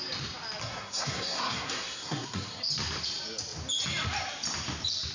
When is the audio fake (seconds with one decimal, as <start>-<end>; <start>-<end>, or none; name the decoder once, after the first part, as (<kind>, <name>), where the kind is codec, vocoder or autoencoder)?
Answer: 0.6-2.6 (codec, SNAC)